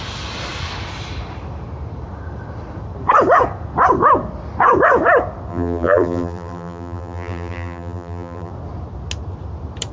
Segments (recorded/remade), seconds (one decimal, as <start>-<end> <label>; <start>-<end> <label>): 0.0-5.5 recorded; 5.5-8.5 remade; 8.5-9.9 recorded